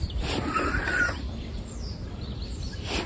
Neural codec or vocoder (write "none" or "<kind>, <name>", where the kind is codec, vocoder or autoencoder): none